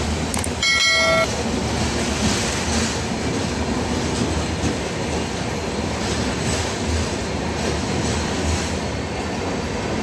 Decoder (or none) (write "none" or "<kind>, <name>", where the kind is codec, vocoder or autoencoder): none